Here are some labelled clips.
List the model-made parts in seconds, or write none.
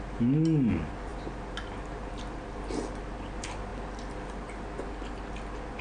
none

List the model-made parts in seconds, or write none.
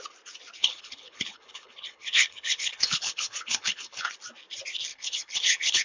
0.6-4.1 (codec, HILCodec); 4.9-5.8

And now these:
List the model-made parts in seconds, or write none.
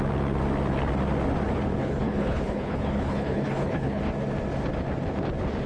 1.8-4.0 (codec, HILCodec)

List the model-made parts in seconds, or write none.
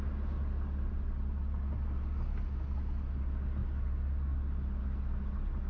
none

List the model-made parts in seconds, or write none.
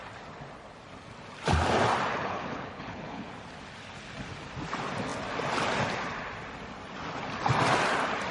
2.1-3.3 (codec, HILCodec)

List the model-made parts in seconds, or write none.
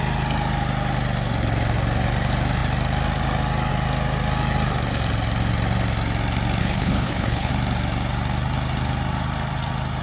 6.6-7.5 (codec, HILCodec)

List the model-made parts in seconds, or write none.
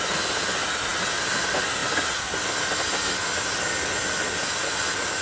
none